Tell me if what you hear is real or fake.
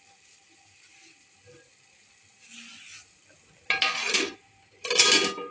real